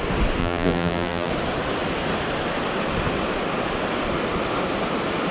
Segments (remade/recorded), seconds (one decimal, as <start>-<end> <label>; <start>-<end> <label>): 0.0-0.4 recorded; 0.4-1.3 remade; 1.3-5.3 recorded